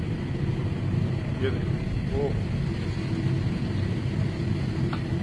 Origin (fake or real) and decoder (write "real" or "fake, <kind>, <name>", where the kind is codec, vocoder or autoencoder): real